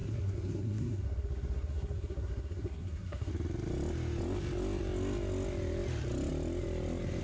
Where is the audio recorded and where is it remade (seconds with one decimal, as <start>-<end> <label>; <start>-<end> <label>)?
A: 0.0-3.3 remade; 3.3-7.2 recorded